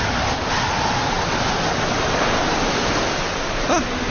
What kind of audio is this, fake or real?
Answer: real